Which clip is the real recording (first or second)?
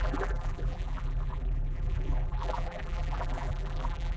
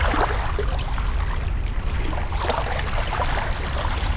second